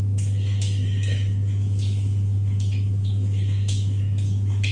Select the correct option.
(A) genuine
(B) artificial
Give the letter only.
B